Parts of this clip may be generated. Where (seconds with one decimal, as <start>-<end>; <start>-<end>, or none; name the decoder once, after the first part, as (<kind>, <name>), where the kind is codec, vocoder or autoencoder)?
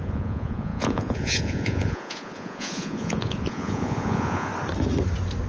0.0-4.5 (vocoder, Vocos)